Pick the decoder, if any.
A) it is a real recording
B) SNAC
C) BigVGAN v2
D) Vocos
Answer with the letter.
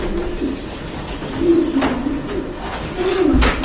A